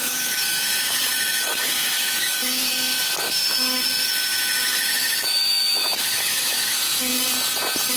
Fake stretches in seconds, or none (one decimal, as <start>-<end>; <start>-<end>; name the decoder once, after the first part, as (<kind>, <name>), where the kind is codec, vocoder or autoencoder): 0.0-7.1 (autoencoder, DAC-VAE)